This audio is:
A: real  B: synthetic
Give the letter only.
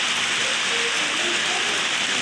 A